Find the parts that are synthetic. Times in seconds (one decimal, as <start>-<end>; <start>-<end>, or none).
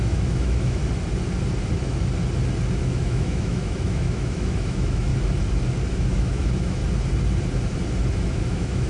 0.0-0.8; 2.8-5.1; 5.9-6.8; 8.5-8.9